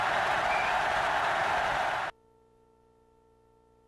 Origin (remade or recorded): recorded